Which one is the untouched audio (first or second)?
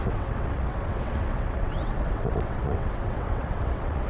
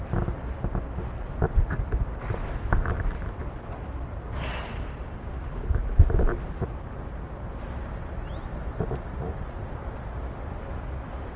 second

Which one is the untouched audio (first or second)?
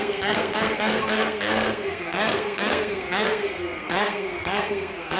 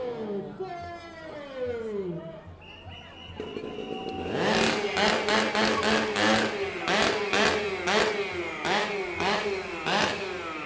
second